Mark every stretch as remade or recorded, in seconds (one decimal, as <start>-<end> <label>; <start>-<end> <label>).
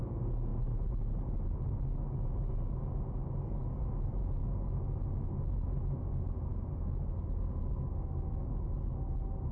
0.0-9.5 recorded